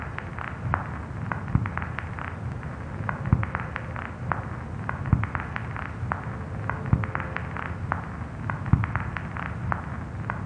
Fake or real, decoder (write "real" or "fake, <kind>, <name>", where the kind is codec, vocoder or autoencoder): real